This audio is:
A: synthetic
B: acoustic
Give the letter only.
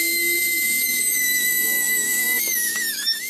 A